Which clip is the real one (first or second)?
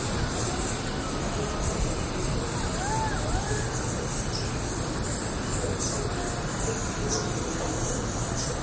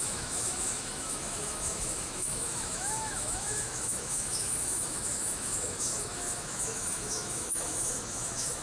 first